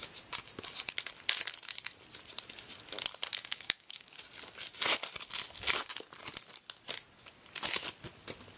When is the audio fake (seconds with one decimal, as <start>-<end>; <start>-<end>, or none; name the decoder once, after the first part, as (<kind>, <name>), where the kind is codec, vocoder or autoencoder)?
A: 3.3-4.2 (codec, DAC)